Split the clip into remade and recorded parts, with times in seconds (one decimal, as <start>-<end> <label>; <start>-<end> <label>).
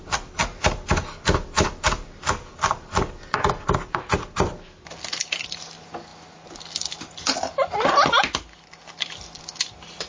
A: 0.0-10.1 recorded